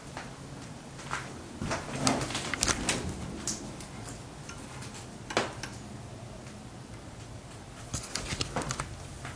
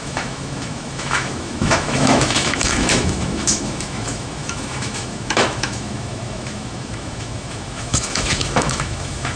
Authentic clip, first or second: first